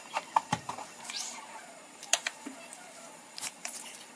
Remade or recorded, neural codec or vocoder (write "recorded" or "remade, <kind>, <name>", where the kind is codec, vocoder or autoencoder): remade, vocoder, BigVGAN v2